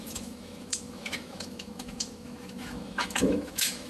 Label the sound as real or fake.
fake